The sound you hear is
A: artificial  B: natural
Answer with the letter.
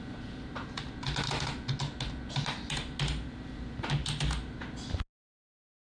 B